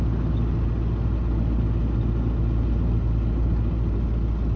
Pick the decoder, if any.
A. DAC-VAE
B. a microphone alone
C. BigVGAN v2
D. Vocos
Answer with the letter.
B